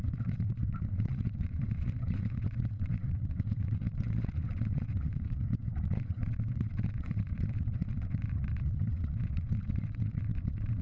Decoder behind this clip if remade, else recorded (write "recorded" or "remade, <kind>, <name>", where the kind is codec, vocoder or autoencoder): remade, vocoder, WaveNeXt